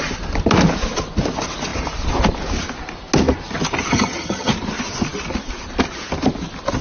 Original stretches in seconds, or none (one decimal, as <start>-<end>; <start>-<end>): 0.0-3.9; 4.5-6.8